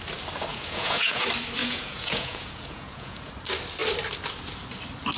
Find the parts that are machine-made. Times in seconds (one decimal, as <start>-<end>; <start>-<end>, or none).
0.5-1.2; 1.6-3.3